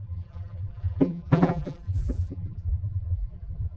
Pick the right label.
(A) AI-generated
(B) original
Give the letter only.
A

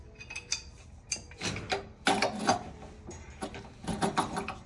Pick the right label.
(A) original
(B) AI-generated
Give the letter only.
A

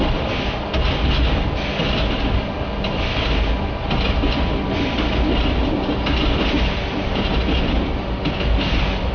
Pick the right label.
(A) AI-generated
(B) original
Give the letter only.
B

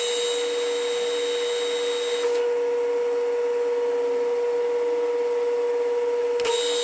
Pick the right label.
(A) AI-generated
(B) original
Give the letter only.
B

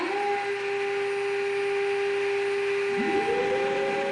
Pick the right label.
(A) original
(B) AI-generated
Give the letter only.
A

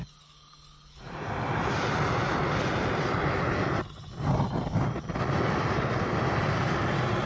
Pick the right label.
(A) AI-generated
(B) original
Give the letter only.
B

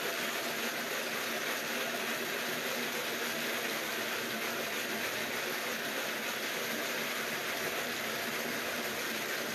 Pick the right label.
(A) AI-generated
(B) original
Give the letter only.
B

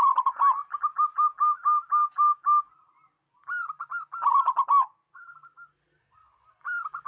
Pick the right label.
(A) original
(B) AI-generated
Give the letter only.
A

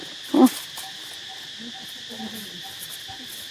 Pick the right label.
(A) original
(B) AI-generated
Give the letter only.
A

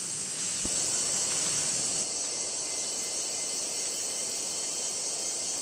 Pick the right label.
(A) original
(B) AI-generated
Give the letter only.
A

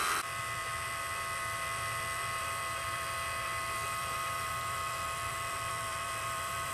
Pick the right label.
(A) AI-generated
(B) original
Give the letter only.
A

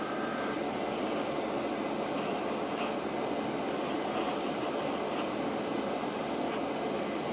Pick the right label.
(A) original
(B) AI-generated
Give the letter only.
A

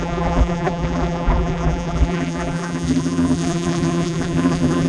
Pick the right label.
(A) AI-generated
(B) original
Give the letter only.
A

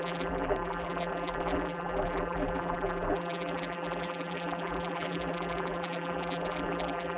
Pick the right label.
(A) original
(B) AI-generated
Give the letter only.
B